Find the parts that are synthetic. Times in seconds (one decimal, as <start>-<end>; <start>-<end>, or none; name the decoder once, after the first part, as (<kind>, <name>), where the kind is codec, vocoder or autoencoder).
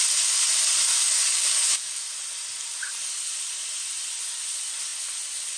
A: 0.9-2.0 (codec, DAC)